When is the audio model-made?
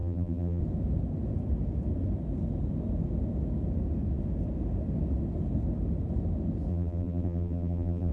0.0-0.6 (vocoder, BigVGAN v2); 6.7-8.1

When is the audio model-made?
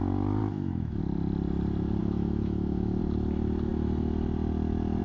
0.4-1.0 (autoencoder, DAC-VAE); 2.0-3.0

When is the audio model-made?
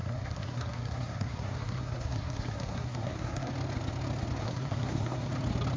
0.0-3.5 (codec, SNAC); 4.4-5.3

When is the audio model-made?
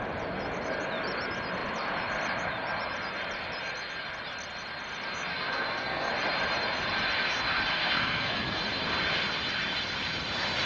5.3-6.1 (codec, SNAC); 7.7-8.6